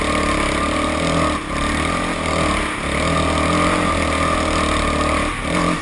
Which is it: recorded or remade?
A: recorded